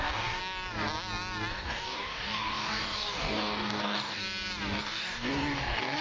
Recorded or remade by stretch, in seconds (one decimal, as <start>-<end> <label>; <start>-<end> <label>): 0.0-0.4 remade; 0.4-1.5 recorded; 1.5-4.2 remade; 4.2-4.8 recorded; 4.8-6.0 remade

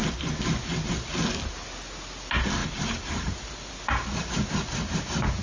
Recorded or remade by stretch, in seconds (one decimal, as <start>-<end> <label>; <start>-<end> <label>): 0.0-2.6 recorded; 2.6-3.7 remade; 3.7-5.4 recorded

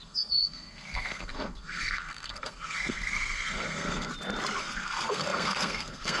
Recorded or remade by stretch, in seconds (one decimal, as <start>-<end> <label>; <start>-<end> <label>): 0.0-4.1 remade; 4.1-4.6 recorded; 4.6-6.2 remade

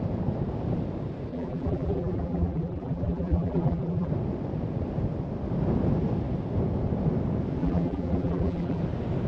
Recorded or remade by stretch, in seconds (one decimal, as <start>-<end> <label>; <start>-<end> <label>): 0.0-1.3 recorded; 1.3-4.1 remade; 4.1-7.6 recorded; 7.6-8.8 remade; 8.8-9.3 recorded

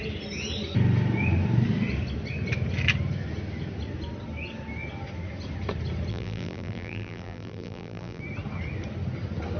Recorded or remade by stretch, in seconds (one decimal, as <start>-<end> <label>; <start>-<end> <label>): 0.0-6.1 recorded; 6.1-8.2 remade; 8.2-9.6 recorded